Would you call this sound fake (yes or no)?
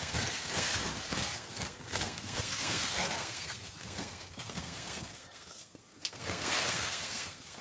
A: yes